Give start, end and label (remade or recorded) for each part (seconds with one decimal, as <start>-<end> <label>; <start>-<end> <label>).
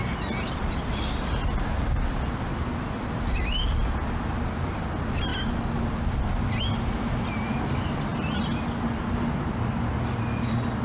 0.0-10.8 recorded